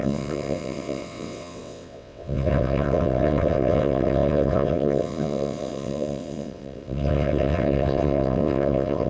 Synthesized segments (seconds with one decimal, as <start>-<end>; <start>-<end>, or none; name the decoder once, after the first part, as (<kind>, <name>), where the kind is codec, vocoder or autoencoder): 0.0-9.1 (vocoder, WaveNeXt)